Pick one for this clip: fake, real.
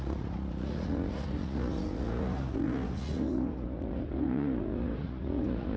fake